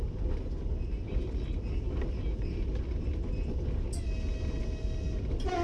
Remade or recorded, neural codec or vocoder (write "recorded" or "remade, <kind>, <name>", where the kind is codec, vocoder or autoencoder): recorded